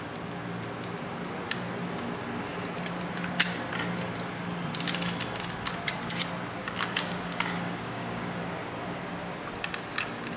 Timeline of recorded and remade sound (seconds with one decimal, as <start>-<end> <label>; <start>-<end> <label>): 0.0-6.6 recorded; 6.6-8.4 remade; 8.4-10.4 recorded